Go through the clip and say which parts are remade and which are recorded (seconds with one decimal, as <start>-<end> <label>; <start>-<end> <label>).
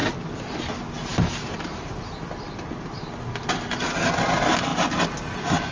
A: 0.0-0.6 remade; 0.6-5.7 recorded